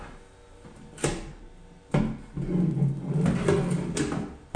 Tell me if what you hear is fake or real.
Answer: real